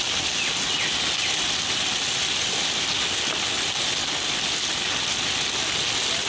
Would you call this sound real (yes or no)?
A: yes